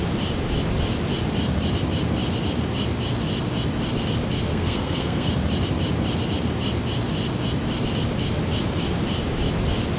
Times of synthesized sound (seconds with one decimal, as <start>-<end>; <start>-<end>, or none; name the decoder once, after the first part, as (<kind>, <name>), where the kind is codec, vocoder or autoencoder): 4.5-5.3 (codec, SNAC)